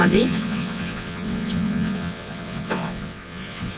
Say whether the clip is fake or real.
fake